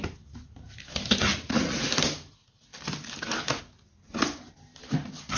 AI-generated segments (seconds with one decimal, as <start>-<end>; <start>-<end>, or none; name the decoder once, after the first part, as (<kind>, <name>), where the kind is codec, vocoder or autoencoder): 1.3-1.9 (vocoder, Vocos)